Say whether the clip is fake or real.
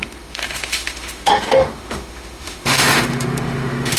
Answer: fake